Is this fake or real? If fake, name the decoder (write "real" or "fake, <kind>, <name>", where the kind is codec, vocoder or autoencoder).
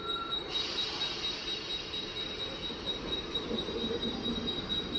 real